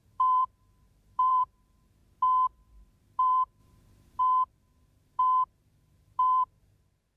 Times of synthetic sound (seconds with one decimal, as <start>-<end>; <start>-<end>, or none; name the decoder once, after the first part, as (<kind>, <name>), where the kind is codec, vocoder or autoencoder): 0.0-2.0 (vocoder, BigVGAN v2); 3.0-7.2